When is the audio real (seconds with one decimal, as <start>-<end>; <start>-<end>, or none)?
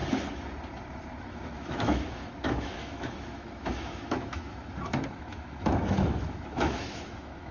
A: 0.0-1.2